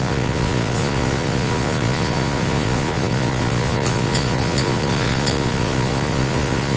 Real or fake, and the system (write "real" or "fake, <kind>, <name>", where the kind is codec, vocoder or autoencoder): fake, vocoder, Vocos